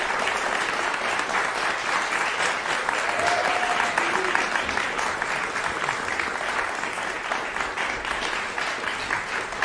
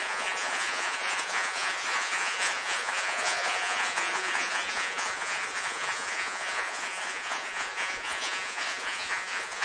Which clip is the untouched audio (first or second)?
first